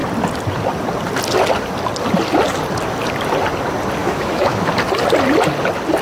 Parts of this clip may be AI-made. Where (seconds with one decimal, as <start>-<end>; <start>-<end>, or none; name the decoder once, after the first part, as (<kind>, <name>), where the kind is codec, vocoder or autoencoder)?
4.0-4.7 (autoencoder, DAC-VAE)

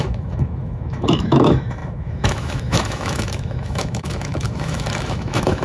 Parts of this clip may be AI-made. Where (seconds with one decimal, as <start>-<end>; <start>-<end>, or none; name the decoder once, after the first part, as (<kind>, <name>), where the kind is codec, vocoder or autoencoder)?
0.0-5.6 (autoencoder, DAC-VAE)

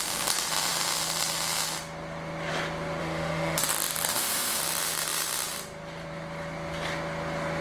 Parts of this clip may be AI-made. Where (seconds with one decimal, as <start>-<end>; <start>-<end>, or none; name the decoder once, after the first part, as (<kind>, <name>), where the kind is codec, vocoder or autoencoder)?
3.0-3.6 (autoencoder, DAC-VAE); 4.1-4.6

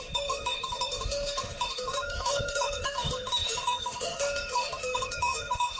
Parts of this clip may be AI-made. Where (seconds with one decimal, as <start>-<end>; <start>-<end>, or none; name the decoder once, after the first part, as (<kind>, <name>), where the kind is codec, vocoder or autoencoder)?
0.0-5.8 (autoencoder, DAC-VAE)